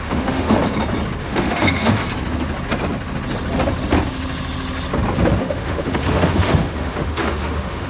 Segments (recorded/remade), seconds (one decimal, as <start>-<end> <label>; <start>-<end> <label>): 0.0-0.6 remade; 0.6-1.2 recorded; 1.2-2.0 remade; 2.0-5.4 recorded; 5.4-7.9 remade

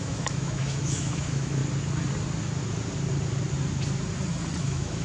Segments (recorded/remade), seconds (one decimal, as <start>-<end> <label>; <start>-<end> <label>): 0.0-1.6 remade; 1.6-4.6 recorded; 4.6-5.0 remade